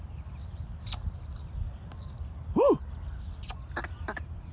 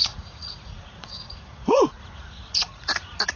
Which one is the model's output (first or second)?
second